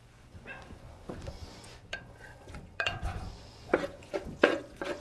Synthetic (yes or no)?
yes